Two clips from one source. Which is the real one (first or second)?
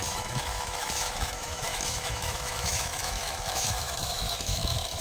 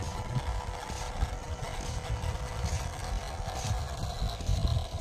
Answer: second